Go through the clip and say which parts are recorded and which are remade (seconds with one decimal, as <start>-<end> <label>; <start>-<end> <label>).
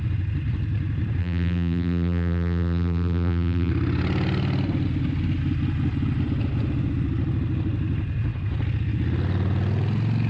0.0-1.2 recorded; 1.2-3.7 remade; 3.7-10.3 recorded